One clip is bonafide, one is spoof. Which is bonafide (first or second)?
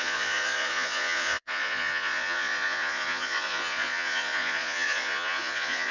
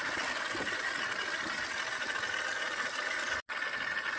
second